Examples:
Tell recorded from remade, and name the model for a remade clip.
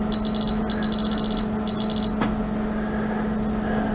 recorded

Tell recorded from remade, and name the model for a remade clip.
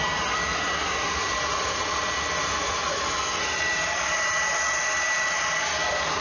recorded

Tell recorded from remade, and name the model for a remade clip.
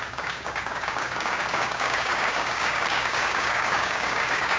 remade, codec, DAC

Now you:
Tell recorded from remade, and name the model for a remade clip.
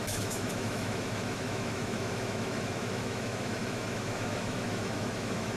remade, autoencoder, DAC-VAE